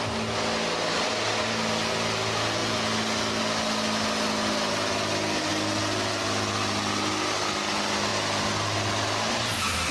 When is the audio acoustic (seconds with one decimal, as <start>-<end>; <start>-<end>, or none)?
0.0-9.9